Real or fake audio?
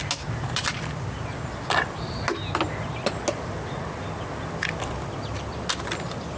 real